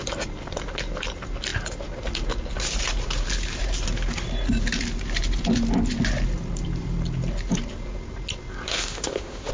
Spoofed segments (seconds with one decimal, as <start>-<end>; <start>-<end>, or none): 8.7-9.5